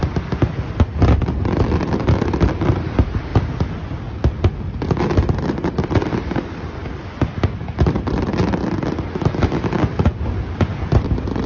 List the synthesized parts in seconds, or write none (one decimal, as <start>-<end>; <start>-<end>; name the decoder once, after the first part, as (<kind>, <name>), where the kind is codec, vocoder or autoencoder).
1.2-3.3 (vocoder, BigVGAN v2); 5.7-6.8; 7.3-8.3; 10.7-11.5